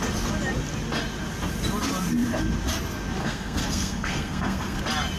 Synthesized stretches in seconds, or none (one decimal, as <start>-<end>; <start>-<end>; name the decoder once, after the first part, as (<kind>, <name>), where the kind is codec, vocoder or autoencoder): 3.2-4.8 (codec, SNAC)